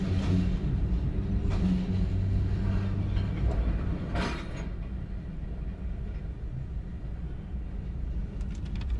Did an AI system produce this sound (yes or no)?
no